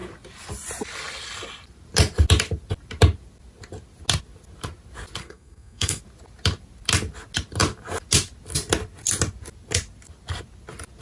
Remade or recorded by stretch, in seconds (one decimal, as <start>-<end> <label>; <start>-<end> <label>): 0.0-5.2 recorded; 5.2-6.0 remade; 6.0-11.0 recorded